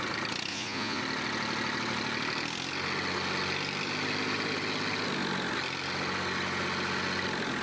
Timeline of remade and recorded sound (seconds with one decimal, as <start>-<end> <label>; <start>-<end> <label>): 0.0-0.5 recorded; 0.5-1.0 remade; 1.0-7.6 recorded